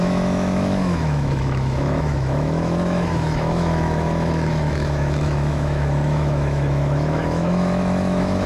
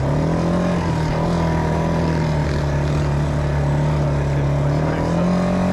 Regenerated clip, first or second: first